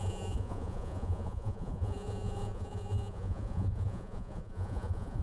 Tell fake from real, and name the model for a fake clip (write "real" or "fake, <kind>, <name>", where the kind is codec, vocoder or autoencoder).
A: fake, vocoder, Vocos